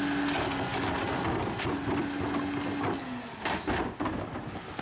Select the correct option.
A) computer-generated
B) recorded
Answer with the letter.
B